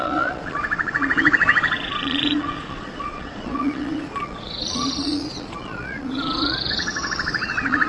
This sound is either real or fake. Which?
fake